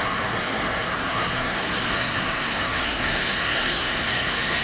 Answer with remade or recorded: remade